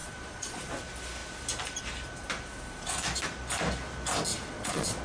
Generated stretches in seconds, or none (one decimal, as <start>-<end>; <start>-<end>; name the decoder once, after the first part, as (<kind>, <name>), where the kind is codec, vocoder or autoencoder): 0.0-0.7 (vocoder, Vocos); 4.3-5.0